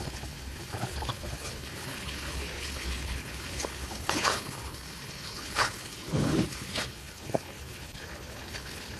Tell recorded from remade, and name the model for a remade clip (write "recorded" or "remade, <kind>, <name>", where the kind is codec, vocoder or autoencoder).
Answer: remade, codec, HILCodec